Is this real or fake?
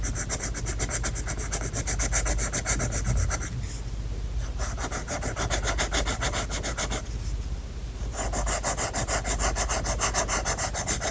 real